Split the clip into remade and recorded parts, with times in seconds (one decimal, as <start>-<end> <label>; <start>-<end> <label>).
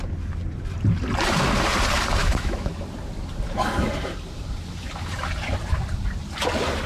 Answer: 0.0-2.2 recorded; 2.2-2.7 remade; 2.7-6.9 recorded